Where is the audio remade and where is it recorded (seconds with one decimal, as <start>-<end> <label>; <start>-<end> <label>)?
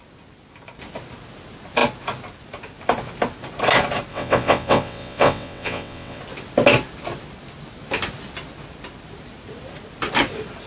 0.0-4.1 recorded; 4.1-6.2 remade; 6.2-10.7 recorded